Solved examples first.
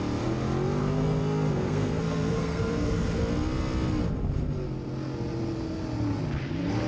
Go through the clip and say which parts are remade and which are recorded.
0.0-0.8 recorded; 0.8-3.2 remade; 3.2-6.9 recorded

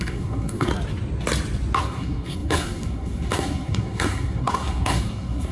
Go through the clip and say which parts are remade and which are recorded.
0.0-0.7 remade; 0.7-1.8 recorded; 1.8-5.5 remade

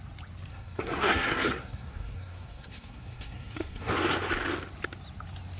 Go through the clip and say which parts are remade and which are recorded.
0.0-0.5 recorded; 0.5-3.9 remade; 3.9-5.6 recorded

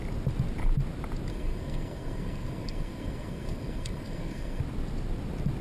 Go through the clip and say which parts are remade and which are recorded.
0.0-1.3 recorded; 1.3-4.6 remade; 4.6-5.6 recorded

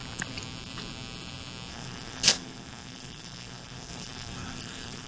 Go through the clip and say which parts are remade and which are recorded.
0.0-1.7 recorded; 1.7-5.1 remade